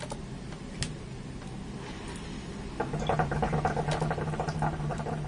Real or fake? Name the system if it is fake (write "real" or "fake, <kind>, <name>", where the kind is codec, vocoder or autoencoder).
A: real